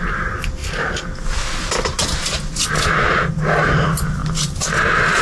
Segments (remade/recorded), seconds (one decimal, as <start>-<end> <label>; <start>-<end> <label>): 0.0-5.2 recorded